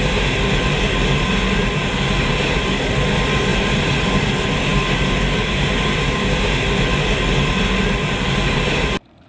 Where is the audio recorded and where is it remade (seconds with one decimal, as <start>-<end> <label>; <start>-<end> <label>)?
0.0-9.3 recorded